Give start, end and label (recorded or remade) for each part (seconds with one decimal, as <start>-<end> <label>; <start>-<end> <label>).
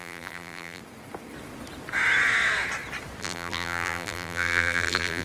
0.0-0.8 remade; 0.8-3.2 recorded; 3.2-5.2 remade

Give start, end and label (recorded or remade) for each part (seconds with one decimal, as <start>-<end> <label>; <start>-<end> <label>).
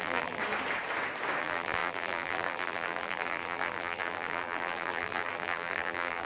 0.0-0.4 remade; 0.4-1.4 recorded; 1.4-6.3 remade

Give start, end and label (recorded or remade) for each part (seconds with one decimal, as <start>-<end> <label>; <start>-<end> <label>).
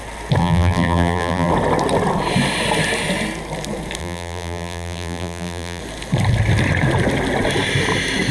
0.0-0.4 recorded; 0.4-1.5 remade; 1.5-4.0 recorded; 4.0-5.8 remade; 5.8-8.3 recorded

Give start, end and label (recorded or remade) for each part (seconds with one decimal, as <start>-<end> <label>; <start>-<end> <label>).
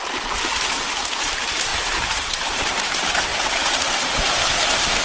0.0-1.7 recorded; 1.7-2.9 remade; 2.9-3.3 recorded; 3.3-4.4 remade; 4.4-5.0 recorded